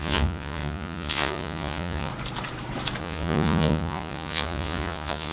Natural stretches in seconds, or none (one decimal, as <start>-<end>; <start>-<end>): 2.1-3.0